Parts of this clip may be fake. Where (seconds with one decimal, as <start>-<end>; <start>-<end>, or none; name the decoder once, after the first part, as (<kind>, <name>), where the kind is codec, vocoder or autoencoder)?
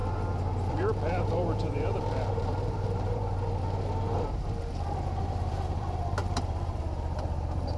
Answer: 0.7-3.2 (vocoder, BigVGAN v2); 5.2-7.8